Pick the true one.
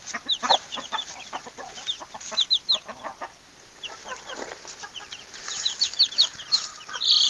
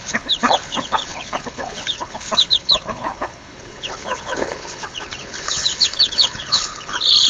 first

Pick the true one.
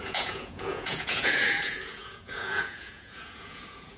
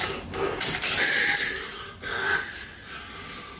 second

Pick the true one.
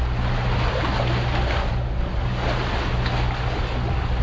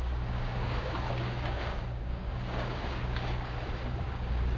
first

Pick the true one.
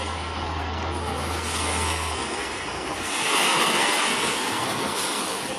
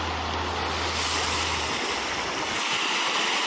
second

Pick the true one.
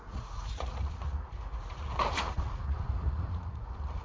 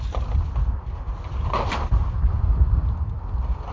second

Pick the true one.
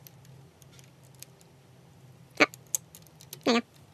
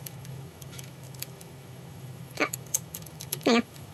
first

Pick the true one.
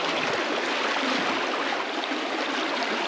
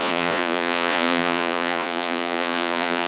first